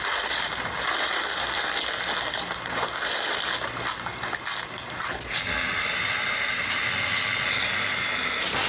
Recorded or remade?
recorded